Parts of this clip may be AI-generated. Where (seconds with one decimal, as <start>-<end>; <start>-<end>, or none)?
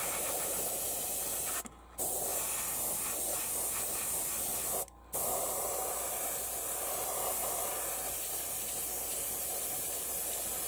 none